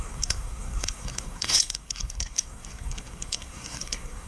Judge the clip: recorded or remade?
remade